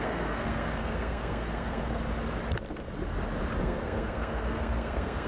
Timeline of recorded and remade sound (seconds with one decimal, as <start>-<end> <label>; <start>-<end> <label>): 0.0-2.1 remade; 2.1-3.6 recorded; 3.6-5.3 remade